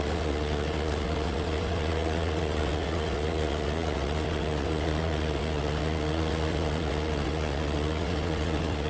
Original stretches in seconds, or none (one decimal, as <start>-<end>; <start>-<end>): none